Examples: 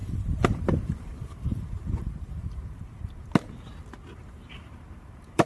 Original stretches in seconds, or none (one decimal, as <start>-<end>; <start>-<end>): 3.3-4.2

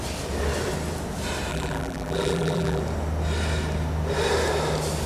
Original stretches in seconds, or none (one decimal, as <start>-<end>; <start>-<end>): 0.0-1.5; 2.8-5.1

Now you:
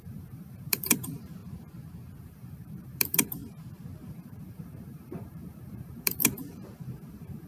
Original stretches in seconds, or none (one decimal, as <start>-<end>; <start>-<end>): 1.4-2.2; 3.4-4.1

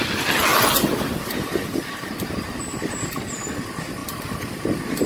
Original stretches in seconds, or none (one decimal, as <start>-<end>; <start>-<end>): 0.0-4.0; 4.6-5.1